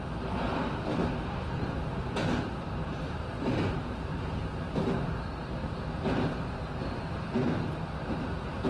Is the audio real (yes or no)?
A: yes